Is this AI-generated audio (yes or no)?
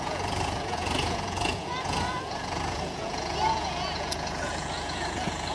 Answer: yes